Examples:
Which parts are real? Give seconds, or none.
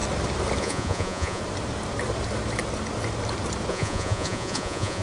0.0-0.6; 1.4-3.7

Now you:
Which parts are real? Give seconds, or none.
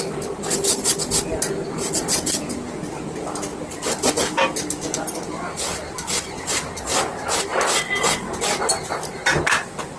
0.0-10.0